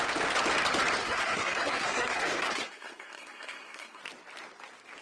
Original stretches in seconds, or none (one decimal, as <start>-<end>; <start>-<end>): 0.0-1.0; 4.0-5.0